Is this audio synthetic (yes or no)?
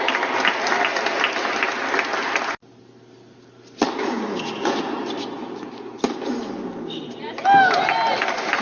no